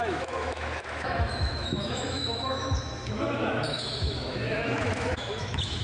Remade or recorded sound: remade